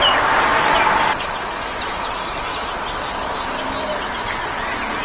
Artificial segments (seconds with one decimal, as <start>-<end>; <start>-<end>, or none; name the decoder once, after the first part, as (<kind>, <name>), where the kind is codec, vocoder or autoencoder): none